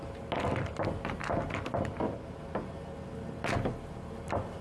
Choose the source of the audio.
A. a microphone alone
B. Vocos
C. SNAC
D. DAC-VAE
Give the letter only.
A